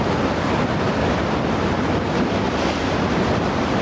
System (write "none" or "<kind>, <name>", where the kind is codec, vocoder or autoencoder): none